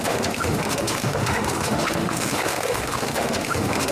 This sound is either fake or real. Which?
fake